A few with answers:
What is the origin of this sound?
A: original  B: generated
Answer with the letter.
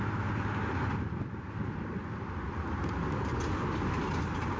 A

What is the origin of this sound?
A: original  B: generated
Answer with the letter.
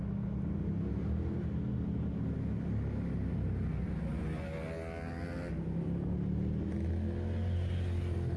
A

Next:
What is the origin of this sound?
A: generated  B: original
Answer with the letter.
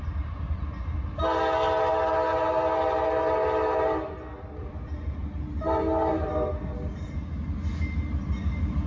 B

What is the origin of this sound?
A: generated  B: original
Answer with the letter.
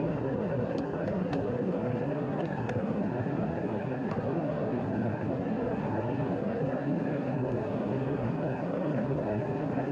A